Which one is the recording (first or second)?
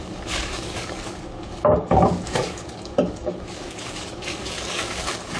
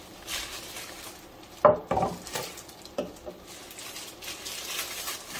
second